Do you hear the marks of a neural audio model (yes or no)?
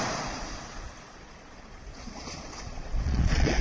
yes